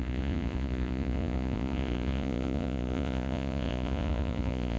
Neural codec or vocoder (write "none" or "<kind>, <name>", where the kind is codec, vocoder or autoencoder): vocoder, Vocos